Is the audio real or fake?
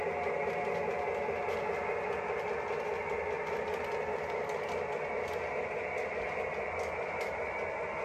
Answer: real